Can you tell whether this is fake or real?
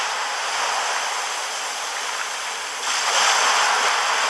real